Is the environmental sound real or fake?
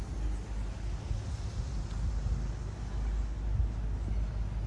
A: real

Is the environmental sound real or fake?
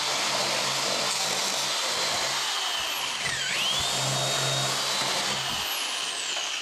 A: real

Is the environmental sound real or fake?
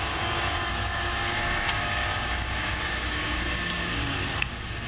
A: fake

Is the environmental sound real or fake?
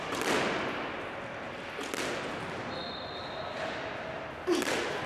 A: real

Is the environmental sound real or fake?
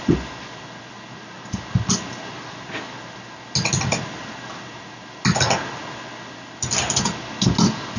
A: real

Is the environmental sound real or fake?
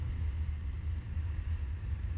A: real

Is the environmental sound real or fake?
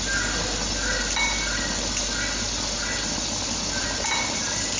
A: real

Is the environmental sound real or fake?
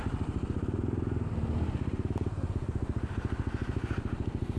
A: real